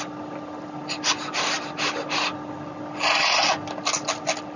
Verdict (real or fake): real